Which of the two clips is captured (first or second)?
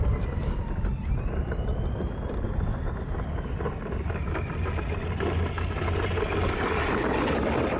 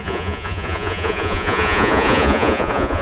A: first